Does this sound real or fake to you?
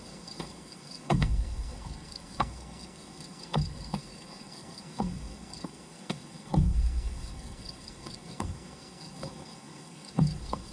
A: fake